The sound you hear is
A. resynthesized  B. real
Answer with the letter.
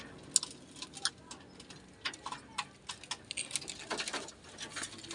B